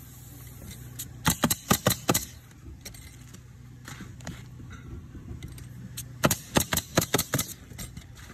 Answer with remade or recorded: recorded